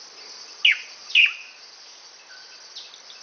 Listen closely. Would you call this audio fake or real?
real